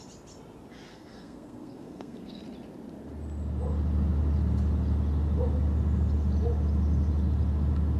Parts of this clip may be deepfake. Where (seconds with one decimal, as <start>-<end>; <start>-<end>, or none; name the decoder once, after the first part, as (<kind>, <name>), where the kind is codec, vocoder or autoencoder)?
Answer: 0.9-2.4 (codec, SNAC)